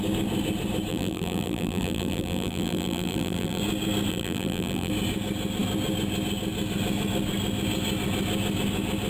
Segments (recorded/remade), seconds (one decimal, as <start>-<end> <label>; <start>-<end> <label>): 0.0-0.9 recorded; 0.9-3.6 remade; 3.6-4.1 recorded; 4.1-4.9 remade; 4.9-9.1 recorded